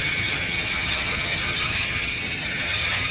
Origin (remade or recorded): remade